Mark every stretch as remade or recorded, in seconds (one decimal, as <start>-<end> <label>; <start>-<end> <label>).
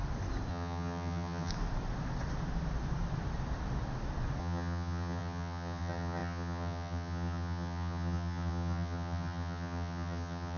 0.0-0.5 recorded; 0.5-1.5 remade; 1.5-4.4 recorded; 4.4-10.6 remade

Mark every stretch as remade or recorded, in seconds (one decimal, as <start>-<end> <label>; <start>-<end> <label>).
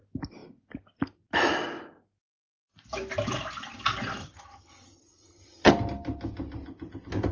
0.0-4.2 recorded; 4.2-5.7 remade; 5.7-7.3 recorded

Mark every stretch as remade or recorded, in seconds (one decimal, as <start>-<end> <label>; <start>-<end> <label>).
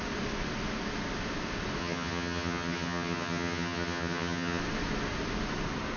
0.0-1.8 recorded; 1.8-4.6 remade; 4.6-6.0 recorded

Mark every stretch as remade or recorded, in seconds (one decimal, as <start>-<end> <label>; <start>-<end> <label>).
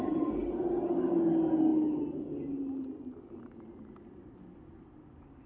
0.0-5.5 recorded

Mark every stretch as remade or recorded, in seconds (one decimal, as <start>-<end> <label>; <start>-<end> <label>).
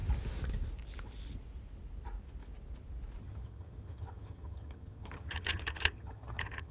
0.0-3.2 recorded; 3.2-6.7 remade